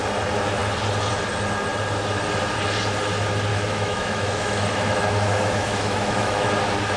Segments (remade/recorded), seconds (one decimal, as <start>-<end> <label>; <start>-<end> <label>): 0.0-3.5 recorded; 3.5-6.5 remade; 6.5-7.0 recorded

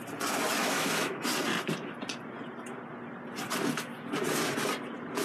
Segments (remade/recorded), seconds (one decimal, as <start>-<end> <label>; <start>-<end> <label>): 0.0-0.6 recorded; 0.6-1.2 remade; 1.2-5.2 recorded

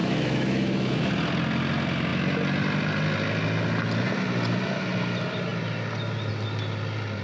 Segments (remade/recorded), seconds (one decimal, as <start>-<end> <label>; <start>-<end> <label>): 0.0-1.1 remade; 1.1-7.2 recorded

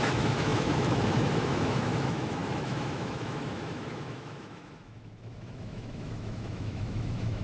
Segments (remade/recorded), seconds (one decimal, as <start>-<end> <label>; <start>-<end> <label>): 0.0-7.4 remade